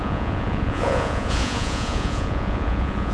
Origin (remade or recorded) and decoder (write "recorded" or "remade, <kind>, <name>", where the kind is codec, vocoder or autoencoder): remade, vocoder, Vocos